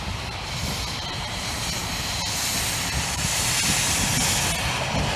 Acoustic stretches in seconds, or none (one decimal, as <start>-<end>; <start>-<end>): 0.0-5.2